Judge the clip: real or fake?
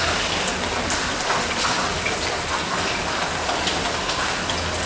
real